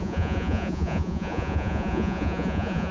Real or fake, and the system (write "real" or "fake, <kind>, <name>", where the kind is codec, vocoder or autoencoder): fake, vocoder, Vocos